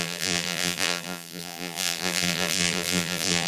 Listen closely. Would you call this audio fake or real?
fake